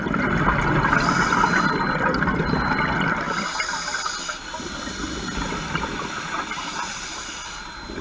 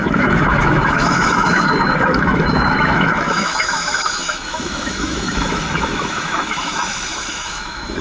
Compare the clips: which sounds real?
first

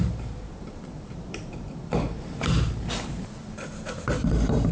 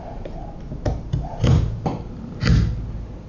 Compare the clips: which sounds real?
second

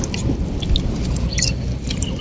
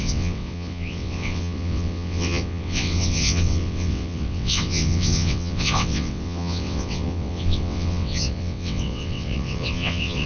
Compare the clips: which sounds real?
first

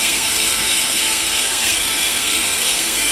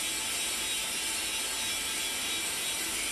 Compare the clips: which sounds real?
second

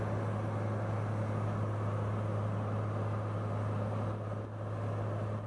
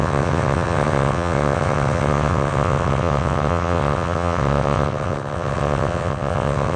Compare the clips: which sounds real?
first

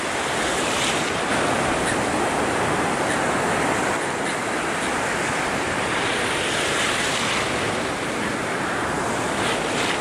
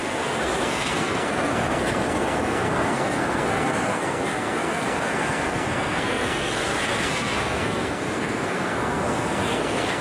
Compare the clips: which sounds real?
first